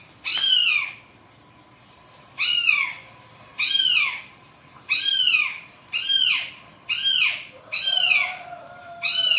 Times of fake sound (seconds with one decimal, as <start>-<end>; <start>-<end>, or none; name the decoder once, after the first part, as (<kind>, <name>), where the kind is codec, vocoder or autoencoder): 0.0-0.6 (vocoder, BigVGAN v2); 2.1-9.4